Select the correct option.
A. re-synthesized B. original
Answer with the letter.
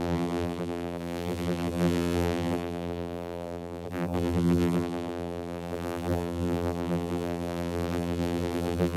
A